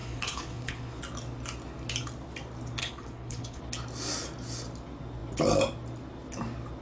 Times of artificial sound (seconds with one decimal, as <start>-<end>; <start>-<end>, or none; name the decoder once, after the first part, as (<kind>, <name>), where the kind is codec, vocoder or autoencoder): 0.0-1.0 (codec, HILCodec); 2.8-3.6